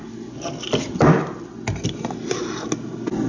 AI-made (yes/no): no